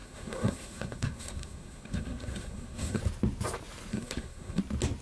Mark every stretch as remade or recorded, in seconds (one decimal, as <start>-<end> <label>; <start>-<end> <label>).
0.0-3.0 remade; 3.0-3.9 recorded; 3.9-4.6 remade; 4.6-5.0 recorded